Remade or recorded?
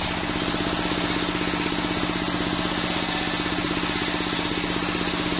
recorded